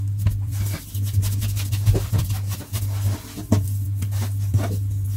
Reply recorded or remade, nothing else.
recorded